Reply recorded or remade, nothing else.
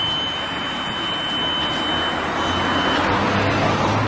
recorded